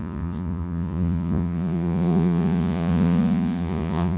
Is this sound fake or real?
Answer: fake